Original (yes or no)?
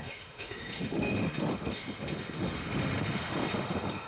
no